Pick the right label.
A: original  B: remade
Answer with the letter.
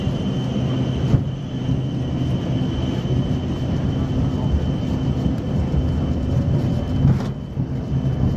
A